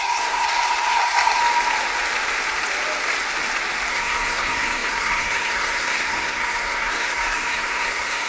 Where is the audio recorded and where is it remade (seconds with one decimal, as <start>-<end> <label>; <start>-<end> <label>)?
0.0-1.4 remade; 1.4-3.9 recorded; 3.9-8.3 remade